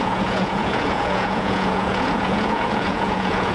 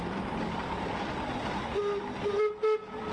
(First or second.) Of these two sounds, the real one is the second